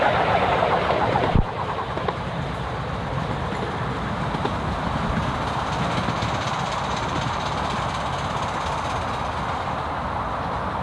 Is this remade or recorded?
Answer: recorded